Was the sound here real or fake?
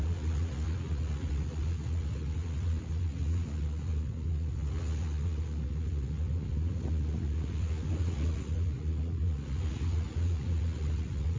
fake